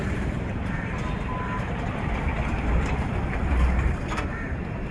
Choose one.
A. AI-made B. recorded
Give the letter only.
A